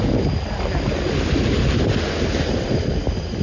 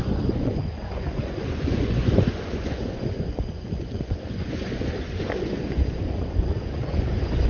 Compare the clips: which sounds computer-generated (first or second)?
second